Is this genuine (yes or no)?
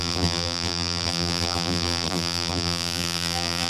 no